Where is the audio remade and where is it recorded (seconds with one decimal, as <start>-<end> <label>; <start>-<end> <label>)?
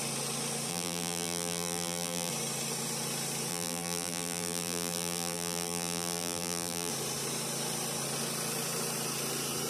0.0-0.7 recorded; 0.7-2.3 remade; 2.3-3.5 recorded; 3.5-6.9 remade; 6.9-9.7 recorded